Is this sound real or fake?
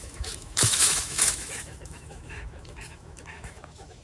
fake